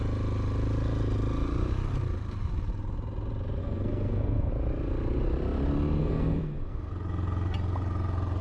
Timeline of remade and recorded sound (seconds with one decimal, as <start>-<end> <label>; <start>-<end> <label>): 0.0-3.6 recorded; 3.6-4.5 remade; 4.5-6.0 recorded; 6.0-6.9 remade; 6.9-8.4 recorded